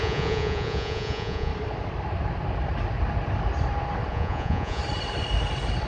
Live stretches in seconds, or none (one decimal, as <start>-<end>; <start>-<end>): 1.5-4.1; 4.8-5.9